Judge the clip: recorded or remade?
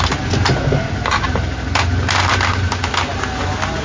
recorded